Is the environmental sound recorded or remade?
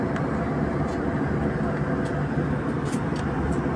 recorded